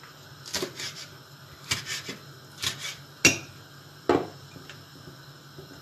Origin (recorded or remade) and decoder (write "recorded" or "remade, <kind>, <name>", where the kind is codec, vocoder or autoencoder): recorded